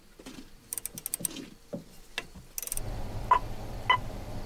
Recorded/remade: recorded